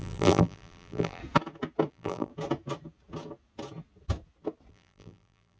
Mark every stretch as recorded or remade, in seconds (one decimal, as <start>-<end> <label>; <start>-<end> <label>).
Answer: 0.0-1.2 remade; 1.2-1.9 recorded; 1.9-2.3 remade; 2.3-4.7 recorded; 4.7-5.6 remade